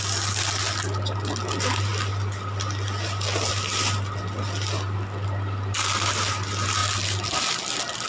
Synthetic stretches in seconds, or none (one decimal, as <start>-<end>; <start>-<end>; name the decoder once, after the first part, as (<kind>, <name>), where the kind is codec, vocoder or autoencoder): none